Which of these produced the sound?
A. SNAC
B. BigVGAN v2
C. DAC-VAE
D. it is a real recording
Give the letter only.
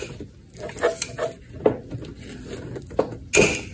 D